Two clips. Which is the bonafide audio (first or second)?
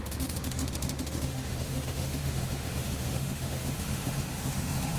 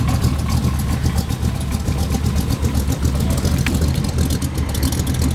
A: second